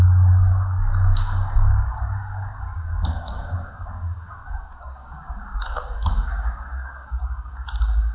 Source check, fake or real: fake